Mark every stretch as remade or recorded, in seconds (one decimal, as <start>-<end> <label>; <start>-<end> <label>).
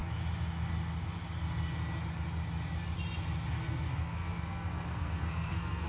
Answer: 0.0-3.5 recorded; 3.5-5.9 remade